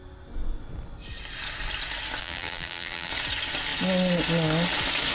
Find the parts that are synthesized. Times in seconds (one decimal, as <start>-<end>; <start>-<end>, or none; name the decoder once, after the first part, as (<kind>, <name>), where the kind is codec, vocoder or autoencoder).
2.2-3.1 (vocoder, BigVGAN v2)